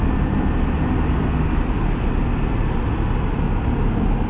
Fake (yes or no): no